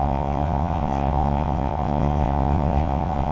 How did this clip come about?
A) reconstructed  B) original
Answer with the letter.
A